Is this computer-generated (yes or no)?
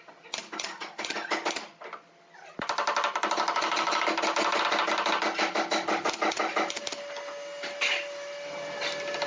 no